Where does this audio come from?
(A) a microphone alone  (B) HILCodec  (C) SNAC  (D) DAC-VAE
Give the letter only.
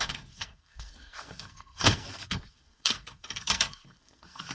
C